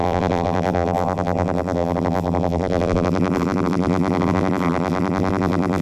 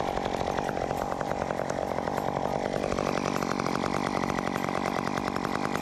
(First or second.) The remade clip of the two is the first